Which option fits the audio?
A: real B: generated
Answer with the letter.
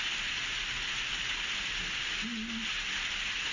A